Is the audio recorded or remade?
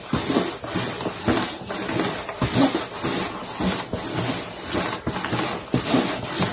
recorded